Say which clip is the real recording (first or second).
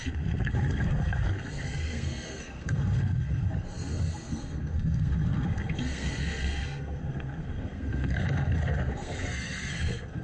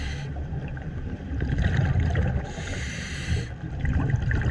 second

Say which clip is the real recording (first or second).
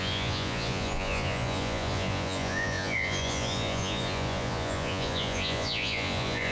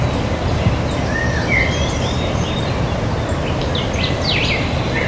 second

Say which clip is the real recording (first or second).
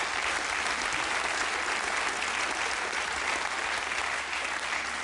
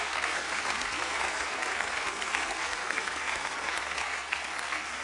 first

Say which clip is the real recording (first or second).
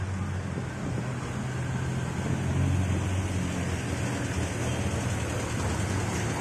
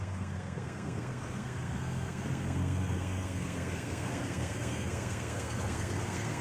first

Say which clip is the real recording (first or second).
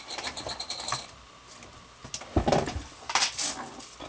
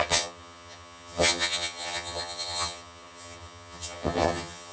first